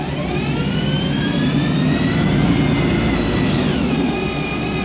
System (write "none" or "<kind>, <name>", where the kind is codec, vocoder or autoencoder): none